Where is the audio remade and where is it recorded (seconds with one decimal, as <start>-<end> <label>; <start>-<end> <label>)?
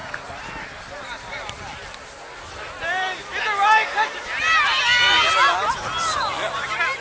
0.0-7.0 recorded